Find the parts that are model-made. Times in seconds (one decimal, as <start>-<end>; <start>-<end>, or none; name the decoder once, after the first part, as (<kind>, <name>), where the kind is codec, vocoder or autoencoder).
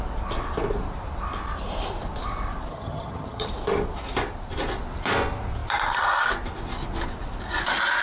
2.7-3.5 (vocoder, HiFi-GAN)